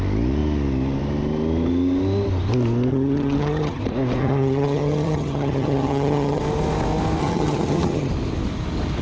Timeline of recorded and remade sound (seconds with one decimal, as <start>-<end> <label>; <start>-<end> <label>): 0.0-2.9 recorded; 2.9-3.8 remade; 3.8-4.2 recorded; 4.2-6.4 remade; 6.4-7.2 recorded; 7.2-8.1 remade; 8.1-9.0 recorded